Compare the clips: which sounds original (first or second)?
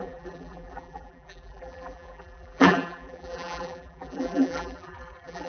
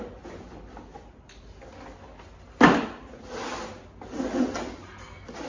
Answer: second